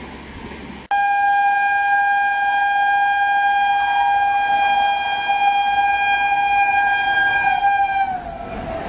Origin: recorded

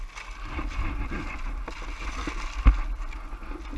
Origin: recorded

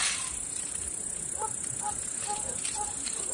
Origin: recorded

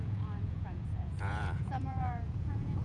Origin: remade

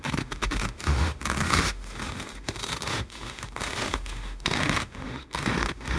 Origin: remade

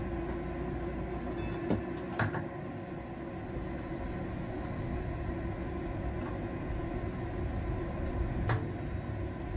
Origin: recorded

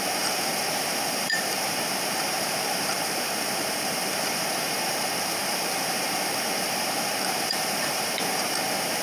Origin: remade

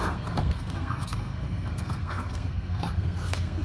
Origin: remade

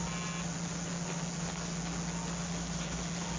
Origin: recorded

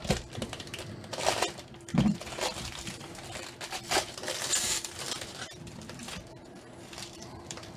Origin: remade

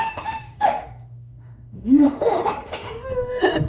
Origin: remade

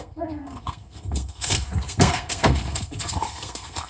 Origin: remade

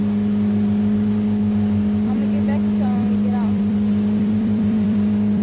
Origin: remade